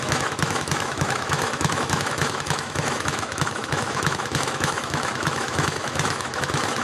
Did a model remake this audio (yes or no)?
yes